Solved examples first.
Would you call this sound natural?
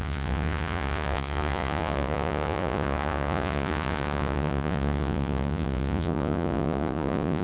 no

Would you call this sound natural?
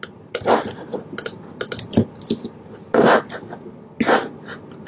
yes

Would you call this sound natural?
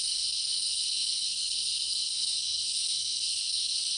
no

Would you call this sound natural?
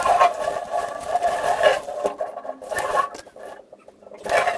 yes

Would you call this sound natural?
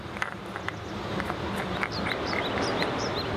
yes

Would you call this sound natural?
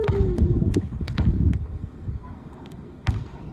no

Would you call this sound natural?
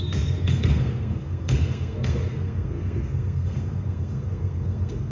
no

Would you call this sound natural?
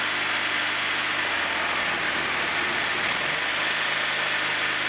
yes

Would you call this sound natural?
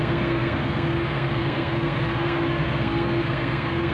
no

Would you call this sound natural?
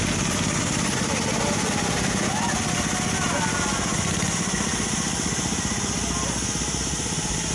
yes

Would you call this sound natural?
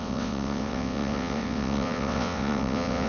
no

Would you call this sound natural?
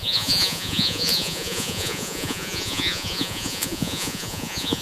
no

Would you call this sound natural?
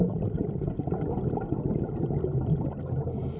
yes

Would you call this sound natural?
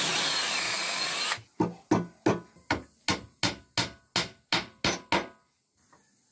yes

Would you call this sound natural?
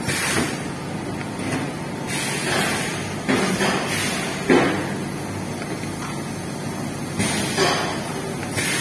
yes